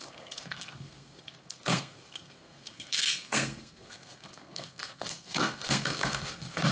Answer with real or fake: fake